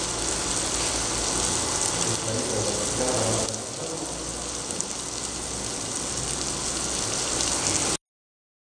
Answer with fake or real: real